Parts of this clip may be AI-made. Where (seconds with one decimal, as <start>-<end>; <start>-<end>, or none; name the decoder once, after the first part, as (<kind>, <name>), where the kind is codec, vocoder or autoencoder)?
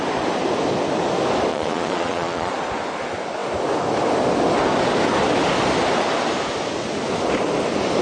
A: 1.5-2.5 (vocoder, Vocos)